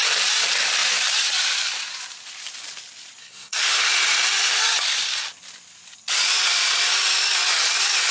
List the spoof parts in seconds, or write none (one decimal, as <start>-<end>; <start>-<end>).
3.2-3.8

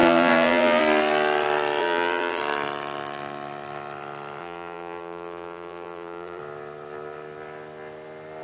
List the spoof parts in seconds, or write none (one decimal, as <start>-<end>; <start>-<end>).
0.0-0.8; 1.8-2.4; 4.4-6.4

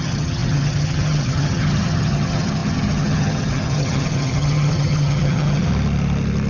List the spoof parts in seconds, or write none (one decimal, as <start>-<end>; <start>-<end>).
0.0-5.7